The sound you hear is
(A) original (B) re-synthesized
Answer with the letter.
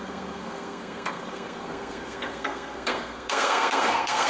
B